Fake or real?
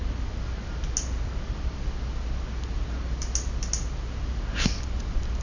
real